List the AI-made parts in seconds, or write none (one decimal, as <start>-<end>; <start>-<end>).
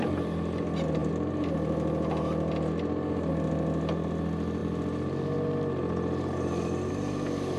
none